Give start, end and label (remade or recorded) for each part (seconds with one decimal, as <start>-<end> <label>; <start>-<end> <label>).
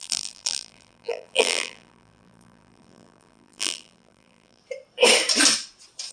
0.0-4.6 remade; 4.6-6.1 recorded